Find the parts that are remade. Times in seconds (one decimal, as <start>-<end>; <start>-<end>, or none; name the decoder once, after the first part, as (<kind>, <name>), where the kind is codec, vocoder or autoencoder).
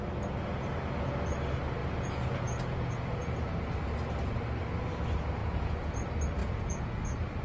1.8-3.5 (vocoder, Vocos); 5.4-5.9; 6.4-7.0